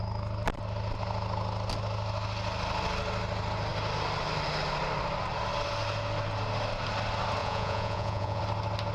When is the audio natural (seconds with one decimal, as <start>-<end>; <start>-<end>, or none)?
0.0-7.4; 8.4-8.9